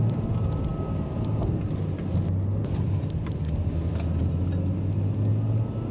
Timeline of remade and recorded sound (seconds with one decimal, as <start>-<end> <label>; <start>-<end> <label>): 0.0-5.9 recorded